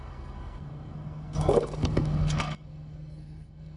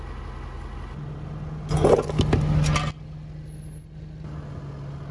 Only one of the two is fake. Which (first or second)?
first